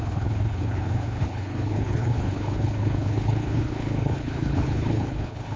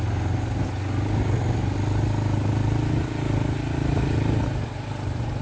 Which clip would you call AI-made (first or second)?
first